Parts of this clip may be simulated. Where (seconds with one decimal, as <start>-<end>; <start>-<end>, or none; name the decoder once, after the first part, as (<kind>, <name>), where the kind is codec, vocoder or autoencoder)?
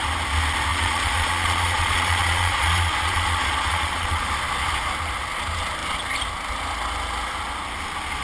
0.7-4.3 (vocoder, Vocos)